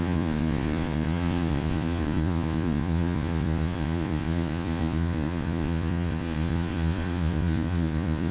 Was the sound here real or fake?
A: fake